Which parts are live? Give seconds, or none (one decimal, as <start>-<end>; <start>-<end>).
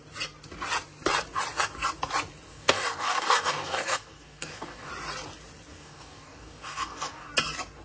0.0-2.5; 4.9-5.7; 7.3-7.8